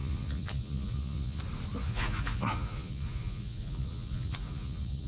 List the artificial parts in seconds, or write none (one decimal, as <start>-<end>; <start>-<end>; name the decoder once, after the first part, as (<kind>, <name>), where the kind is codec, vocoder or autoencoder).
0.0-1.4 (vocoder, Vocos); 1.8-5.1